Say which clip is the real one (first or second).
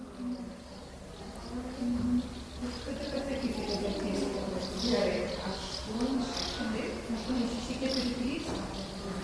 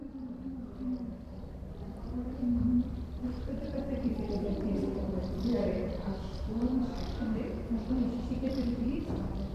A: first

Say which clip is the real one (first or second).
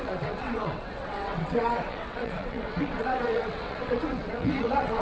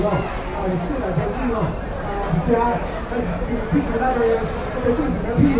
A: second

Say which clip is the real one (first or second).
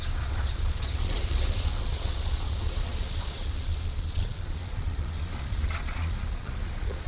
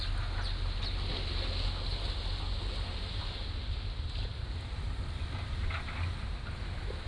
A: second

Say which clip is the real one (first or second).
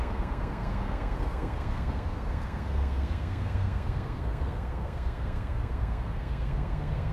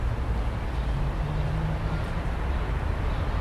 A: second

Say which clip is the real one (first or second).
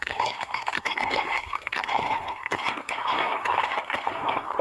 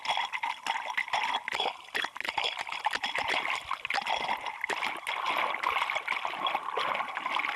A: second